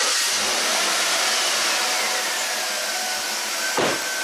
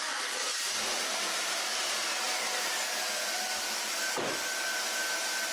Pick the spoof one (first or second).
second